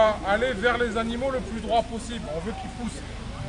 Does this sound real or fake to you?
real